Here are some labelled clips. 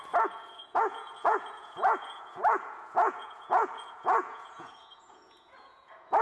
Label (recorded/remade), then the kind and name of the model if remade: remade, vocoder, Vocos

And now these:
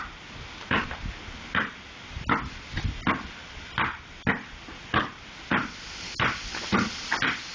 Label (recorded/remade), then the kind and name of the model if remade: recorded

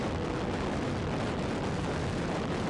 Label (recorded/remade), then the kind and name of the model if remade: recorded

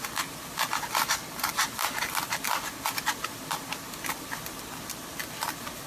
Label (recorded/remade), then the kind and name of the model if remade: recorded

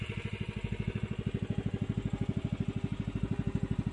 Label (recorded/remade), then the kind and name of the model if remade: recorded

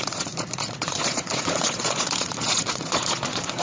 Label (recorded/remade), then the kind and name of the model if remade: remade, vocoder, Vocos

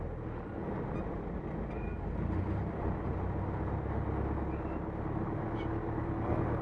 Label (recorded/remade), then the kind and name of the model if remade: recorded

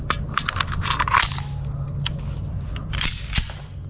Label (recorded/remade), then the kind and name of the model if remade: recorded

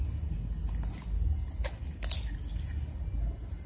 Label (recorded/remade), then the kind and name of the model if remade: recorded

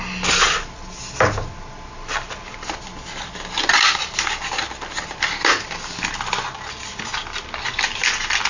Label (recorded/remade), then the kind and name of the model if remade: recorded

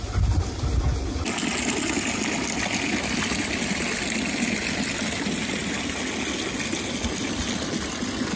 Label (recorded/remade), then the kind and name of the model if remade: recorded